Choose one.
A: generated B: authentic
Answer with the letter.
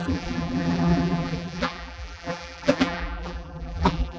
A